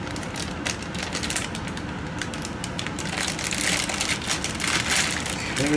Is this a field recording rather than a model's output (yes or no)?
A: yes